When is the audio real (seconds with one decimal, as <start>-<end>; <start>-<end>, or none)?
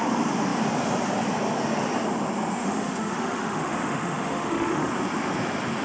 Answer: 0.0-2.6; 4.9-5.8